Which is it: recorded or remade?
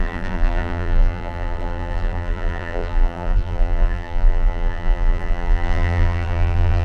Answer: remade